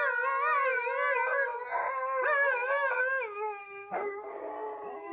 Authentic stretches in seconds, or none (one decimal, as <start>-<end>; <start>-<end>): 0.0-3.6; 4.5-5.1